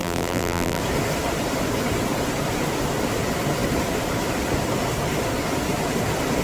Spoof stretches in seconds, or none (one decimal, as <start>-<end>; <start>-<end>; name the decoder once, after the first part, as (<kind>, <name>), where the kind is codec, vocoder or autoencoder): 0.0-0.8 (vocoder, BigVGAN v2)